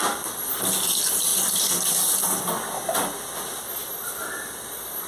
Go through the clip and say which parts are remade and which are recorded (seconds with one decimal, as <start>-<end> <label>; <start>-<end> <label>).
0.0-5.1 recorded